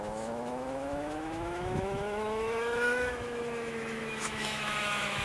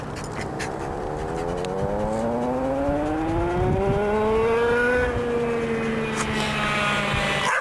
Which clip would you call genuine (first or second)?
second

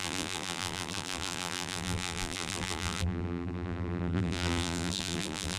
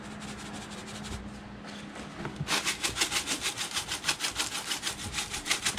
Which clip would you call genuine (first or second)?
second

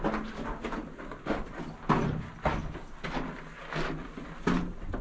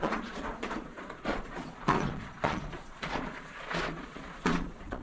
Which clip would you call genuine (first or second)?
first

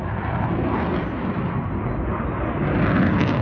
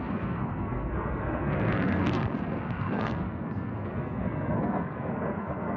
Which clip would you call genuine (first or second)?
first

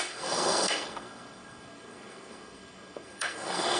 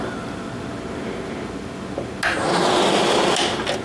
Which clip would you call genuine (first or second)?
second